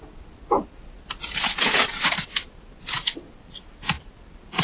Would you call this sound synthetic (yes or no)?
no